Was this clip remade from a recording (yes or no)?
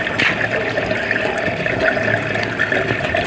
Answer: no